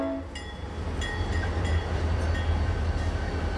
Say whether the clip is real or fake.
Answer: real